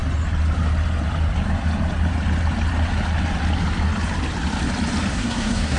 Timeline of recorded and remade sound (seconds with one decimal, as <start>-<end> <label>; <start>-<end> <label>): 0.0-5.1 recorded; 5.1-5.8 remade